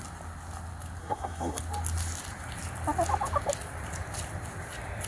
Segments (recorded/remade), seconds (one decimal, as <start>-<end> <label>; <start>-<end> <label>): 0.0-1.0 recorded; 1.0-1.6 remade; 1.6-5.1 recorded